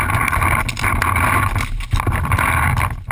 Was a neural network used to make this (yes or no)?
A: no